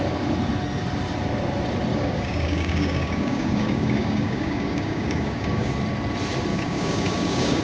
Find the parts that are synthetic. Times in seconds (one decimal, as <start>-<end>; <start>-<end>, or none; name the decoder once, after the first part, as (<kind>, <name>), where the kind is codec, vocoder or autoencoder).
1.9-5.7 (codec, DAC); 6.5-7.6

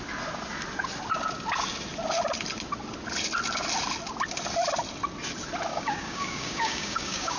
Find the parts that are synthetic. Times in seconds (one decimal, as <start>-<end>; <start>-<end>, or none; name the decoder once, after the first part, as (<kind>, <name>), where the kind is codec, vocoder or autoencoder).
5.7-7.4 (codec, DAC)

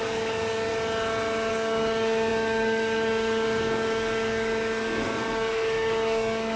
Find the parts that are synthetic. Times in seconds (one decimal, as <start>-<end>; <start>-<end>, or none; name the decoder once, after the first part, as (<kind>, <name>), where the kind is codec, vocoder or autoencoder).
0.0-0.7 (codec, DAC); 1.5-6.6

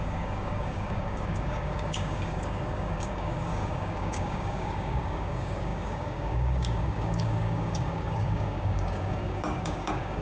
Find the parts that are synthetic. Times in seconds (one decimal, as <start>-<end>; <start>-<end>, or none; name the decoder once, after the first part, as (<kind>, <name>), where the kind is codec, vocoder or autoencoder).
0.0-10.2 (codec, DAC)